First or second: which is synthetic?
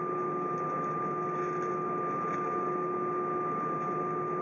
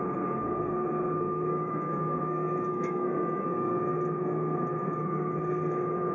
second